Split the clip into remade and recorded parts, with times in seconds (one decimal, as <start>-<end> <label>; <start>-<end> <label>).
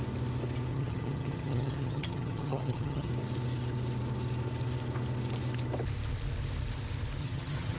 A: 0.0-0.7 recorded; 0.7-3.1 remade; 3.1-7.2 recorded; 7.2-7.8 remade